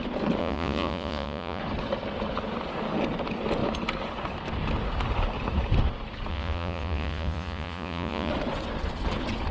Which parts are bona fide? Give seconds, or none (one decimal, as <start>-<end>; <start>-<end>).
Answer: 0.0-0.4; 1.6-6.3; 8.3-9.5